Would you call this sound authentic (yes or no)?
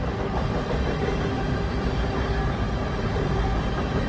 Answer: yes